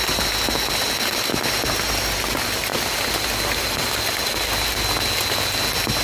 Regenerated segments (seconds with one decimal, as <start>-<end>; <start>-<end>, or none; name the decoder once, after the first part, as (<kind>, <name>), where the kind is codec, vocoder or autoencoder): none